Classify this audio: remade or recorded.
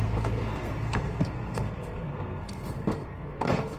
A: remade